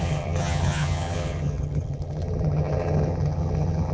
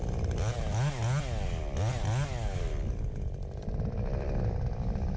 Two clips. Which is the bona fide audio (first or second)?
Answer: second